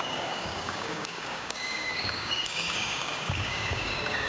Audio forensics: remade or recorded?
remade